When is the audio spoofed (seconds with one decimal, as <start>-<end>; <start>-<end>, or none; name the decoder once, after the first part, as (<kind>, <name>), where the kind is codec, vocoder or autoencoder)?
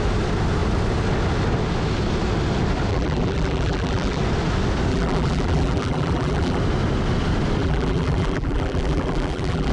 2.9-4.2 (vocoder, BigVGAN v2); 4.9-6.6; 7.6-9.7